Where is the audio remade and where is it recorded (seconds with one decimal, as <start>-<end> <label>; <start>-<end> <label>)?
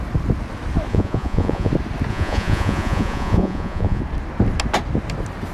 0.0-0.9 recorded; 0.9-1.7 remade; 1.7-2.1 recorded; 2.1-4.0 remade; 4.0-5.5 recorded